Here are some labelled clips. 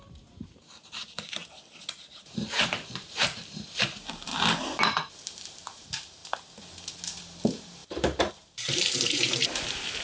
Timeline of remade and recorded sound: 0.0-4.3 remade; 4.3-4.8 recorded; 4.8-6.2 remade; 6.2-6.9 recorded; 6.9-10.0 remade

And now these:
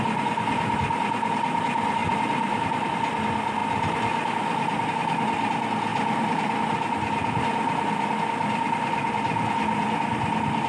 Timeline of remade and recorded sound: 0.0-2.0 recorded; 2.0-2.7 remade; 2.7-10.7 recorded

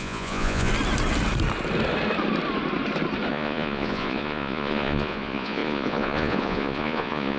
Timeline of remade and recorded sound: 0.0-0.7 remade; 0.7-3.3 recorded; 3.3-7.4 remade